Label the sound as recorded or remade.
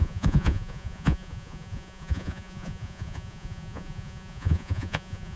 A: remade